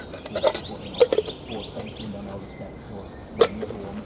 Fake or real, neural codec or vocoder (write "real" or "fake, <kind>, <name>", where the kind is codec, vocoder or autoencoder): real